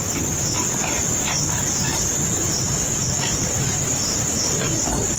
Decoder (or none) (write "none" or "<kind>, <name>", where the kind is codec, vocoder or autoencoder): none